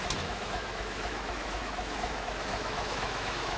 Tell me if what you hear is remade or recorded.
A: remade